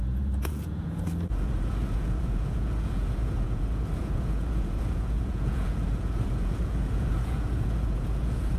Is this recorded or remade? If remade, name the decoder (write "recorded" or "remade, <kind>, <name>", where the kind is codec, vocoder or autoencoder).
remade, vocoder, Vocos